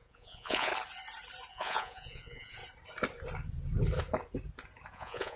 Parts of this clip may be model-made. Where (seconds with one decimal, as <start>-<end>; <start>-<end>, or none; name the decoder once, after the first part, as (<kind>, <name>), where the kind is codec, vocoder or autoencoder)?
0.0-0.7 (vocoder, Vocos); 1.5-2.6; 4.9-5.4